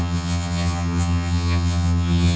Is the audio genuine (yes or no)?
no